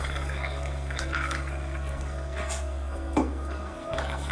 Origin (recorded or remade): remade